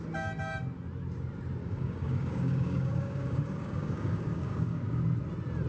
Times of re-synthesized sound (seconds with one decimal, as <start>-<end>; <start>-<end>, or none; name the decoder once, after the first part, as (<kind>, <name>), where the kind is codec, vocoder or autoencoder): 1.6-5.0 (codec, DAC)